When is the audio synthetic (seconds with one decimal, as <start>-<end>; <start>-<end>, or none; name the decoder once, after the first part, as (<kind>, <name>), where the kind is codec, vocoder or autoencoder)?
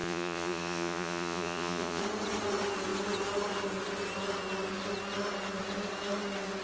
0.0-2.0 (vocoder, Vocos)